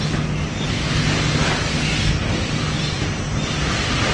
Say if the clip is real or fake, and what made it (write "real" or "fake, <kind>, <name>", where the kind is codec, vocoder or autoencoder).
real